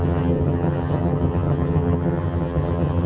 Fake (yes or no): yes